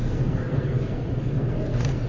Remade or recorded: remade